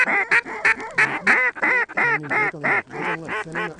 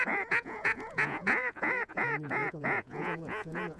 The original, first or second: first